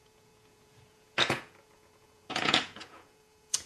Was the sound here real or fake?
fake